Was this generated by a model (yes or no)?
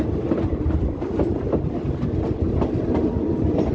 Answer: no